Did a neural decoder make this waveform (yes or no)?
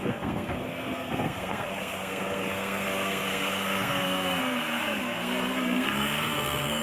yes